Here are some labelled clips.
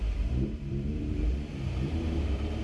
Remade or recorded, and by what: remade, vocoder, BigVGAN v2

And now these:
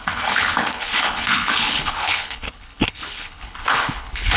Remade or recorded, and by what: remade, codec, HILCodec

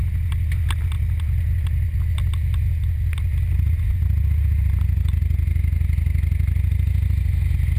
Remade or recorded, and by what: recorded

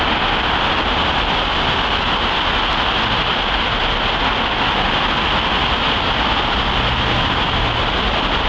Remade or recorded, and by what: recorded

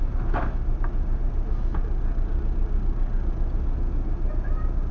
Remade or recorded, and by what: recorded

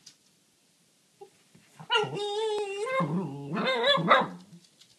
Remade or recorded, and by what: recorded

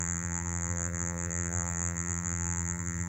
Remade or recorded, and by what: remade, vocoder, BigVGAN v2